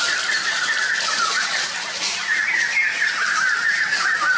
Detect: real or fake real